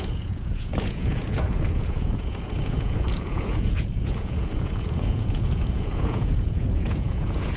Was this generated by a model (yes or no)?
yes